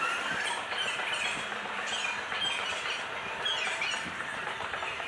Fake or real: fake